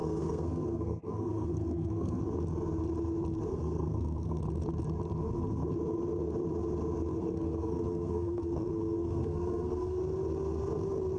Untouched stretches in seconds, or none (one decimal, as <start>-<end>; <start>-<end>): 2.2-3.5; 4.4-7.1; 10.0-11.2